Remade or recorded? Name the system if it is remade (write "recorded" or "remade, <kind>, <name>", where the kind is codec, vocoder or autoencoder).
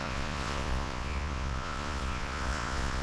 remade, vocoder, Vocos